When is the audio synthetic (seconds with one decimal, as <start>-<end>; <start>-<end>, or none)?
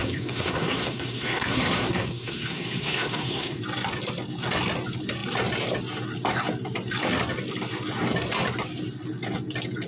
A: 0.0-3.6